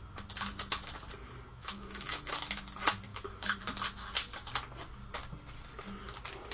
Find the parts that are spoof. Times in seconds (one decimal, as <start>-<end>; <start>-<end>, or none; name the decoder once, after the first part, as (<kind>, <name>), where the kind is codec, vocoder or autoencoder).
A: 1.5-2.4 (autoencoder, DAC-VAE); 3.1-3.6